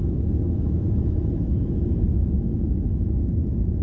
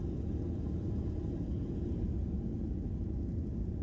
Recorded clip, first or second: second